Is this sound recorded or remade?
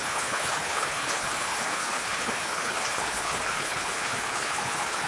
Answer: remade